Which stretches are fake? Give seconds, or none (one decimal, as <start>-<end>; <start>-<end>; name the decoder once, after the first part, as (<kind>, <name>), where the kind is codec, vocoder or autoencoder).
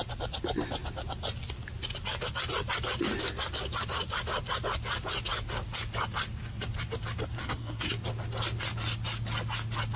7.3-7.9 (codec, SNAC)